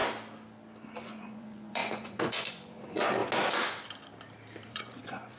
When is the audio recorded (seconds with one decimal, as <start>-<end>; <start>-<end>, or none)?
0.0-1.0; 3.2-4.7